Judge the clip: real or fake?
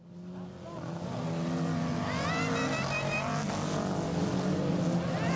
real